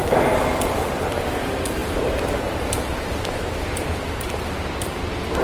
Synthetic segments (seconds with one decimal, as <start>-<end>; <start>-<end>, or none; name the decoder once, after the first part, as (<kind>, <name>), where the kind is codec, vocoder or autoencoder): 0.5-1.1 (vocoder, BigVGAN v2)